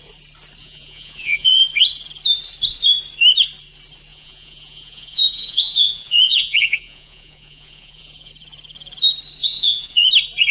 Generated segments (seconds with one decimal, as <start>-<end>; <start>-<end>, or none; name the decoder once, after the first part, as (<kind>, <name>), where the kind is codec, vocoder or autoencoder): 0.6-1.6 (vocoder, Vocos); 4.1-8.3; 9.4-10.1